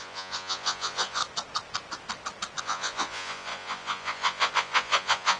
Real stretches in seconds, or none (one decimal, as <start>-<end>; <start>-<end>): 1.2-2.6